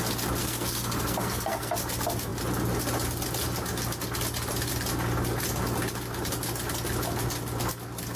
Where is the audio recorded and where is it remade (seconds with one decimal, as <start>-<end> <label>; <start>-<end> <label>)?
0.0-0.4 recorded; 0.4-1.7 remade; 1.7-8.2 recorded